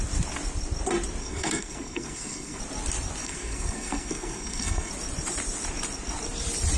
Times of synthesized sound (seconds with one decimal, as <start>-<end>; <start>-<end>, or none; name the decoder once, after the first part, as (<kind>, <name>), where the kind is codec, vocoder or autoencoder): 1.2-2.6 (codec, SNAC); 3.2-4.9